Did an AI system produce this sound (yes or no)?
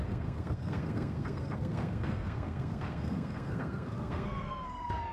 yes